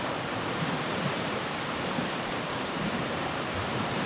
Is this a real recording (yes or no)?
no